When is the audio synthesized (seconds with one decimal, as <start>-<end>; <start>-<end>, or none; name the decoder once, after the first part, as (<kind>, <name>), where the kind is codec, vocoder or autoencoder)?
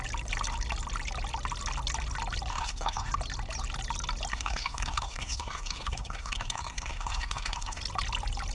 2.5-3.1 (codec, SNAC); 4.3-7.8